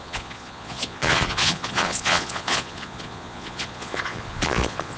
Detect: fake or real fake